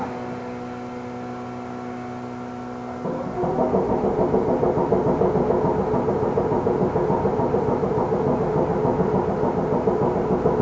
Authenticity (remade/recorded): recorded